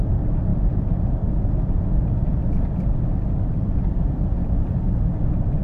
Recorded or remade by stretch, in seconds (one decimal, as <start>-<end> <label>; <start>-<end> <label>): 0.0-5.6 recorded